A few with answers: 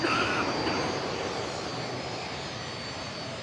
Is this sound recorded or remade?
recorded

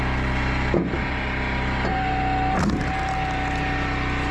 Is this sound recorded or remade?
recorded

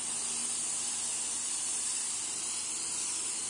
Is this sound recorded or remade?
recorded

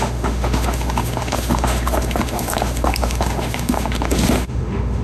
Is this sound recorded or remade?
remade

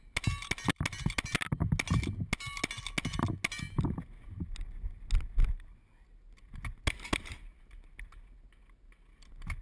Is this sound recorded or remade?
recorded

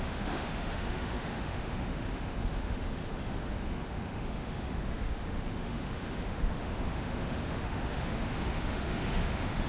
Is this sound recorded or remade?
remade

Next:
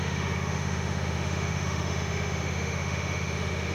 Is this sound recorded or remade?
remade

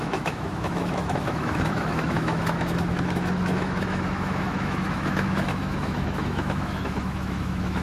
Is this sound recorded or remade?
remade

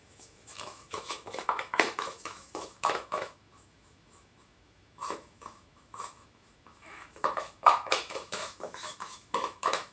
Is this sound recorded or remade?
remade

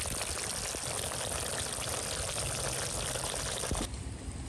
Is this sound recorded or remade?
recorded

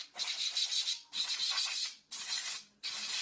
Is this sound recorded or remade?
recorded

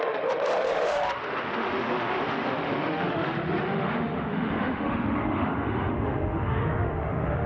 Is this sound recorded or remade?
remade